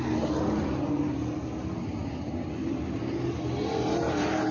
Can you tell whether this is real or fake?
real